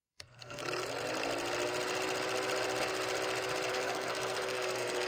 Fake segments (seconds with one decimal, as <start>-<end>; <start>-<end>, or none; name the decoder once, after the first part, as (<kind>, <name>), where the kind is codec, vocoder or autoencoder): 0.0-0.6 (codec, SNAC); 3.7-5.1

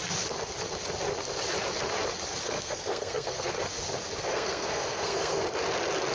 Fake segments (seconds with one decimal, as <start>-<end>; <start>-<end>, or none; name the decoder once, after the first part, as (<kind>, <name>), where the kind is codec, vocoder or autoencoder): 2.4-3.6 (codec, SNAC); 4.2-5.4

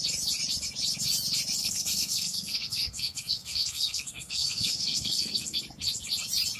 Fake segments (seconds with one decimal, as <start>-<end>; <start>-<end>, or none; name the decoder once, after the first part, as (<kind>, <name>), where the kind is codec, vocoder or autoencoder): 1.6-5.6 (codec, SNAC)